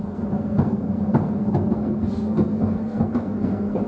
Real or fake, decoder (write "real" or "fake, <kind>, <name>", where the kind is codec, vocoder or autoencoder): fake, codec, SNAC